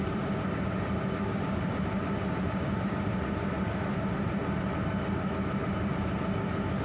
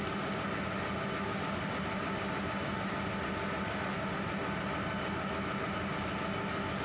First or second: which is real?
second